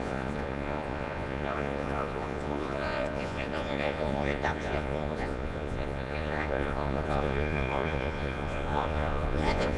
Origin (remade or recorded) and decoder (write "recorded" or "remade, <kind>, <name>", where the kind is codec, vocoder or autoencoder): remade, vocoder, Vocos